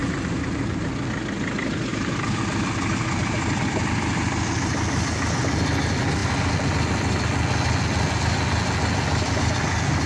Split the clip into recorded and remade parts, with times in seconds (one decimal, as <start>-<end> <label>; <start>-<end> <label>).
0.0-0.9 remade; 0.9-1.9 recorded; 1.9-2.4 remade; 2.4-10.1 recorded